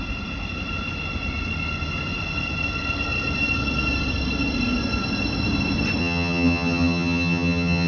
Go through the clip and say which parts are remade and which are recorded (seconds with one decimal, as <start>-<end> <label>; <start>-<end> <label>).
0.0-6.0 recorded; 6.0-7.9 remade